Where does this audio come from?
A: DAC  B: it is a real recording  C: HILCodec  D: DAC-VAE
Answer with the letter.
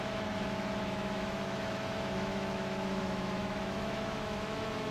D